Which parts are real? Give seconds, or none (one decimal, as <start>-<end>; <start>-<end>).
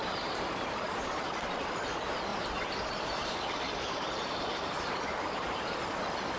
1.3-2.3; 5.8-6.4